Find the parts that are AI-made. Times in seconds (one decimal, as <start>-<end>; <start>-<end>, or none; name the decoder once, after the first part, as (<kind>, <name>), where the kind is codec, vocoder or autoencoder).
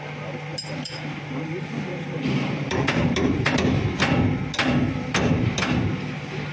0.5-1.2 (vocoder, BigVGAN v2); 1.9-4.0; 4.6-5.8